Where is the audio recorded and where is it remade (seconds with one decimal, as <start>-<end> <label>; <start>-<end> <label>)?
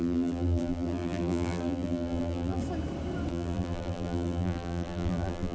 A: 0.0-2.6 remade; 2.6-3.3 recorded; 3.3-5.5 remade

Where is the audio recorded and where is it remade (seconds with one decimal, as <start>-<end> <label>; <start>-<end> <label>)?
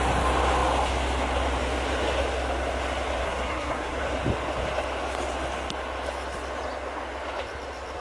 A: 0.0-3.2 recorded; 3.2-4.0 remade; 4.0-8.0 recorded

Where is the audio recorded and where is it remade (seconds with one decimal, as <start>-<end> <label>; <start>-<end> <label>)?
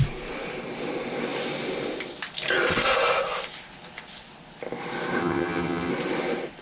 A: 0.0-5.2 recorded; 5.2-5.9 remade; 5.9-6.6 recorded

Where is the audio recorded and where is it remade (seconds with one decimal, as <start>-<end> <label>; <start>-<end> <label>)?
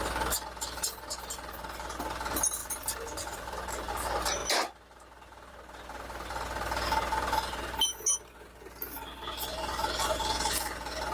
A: 0.0-2.6 recorded; 2.6-3.9 remade; 3.9-11.1 recorded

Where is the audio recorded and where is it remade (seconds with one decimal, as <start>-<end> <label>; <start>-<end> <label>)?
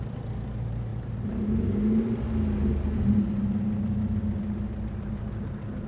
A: 0.0-5.9 recorded